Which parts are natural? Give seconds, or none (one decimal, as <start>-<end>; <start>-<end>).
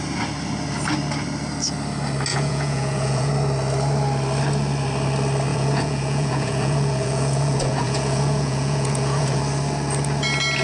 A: 0.0-2.3; 3.3-5.5; 9.4-10.6